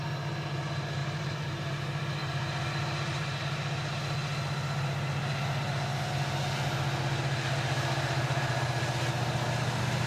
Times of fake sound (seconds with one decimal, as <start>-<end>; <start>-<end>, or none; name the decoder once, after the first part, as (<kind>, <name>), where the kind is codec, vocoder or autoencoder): 1.0-1.8 (vocoder, BigVGAN v2); 2.2-3.4